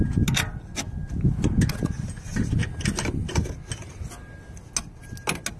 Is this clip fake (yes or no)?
no